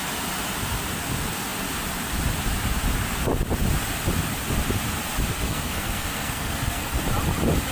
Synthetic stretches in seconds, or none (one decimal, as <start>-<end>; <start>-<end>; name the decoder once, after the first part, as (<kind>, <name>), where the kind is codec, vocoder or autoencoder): 5.3-7.0 (codec, SNAC)